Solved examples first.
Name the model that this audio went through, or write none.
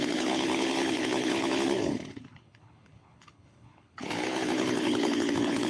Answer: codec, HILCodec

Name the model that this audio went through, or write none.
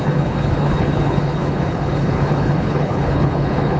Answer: codec, HILCodec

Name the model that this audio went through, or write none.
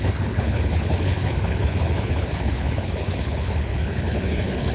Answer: codec, HILCodec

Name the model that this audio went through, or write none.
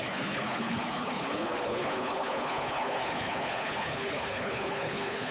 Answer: codec, HILCodec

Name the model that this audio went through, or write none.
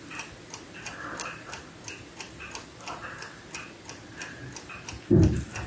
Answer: none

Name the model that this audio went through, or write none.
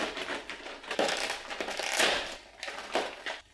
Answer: none